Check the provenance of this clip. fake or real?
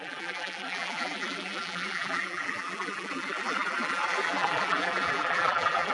fake